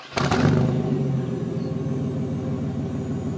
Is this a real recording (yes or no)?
yes